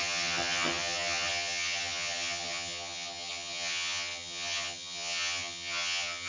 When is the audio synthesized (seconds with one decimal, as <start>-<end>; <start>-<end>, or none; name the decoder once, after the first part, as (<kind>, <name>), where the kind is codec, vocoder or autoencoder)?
0.0-6.3 (vocoder, HiFi-GAN)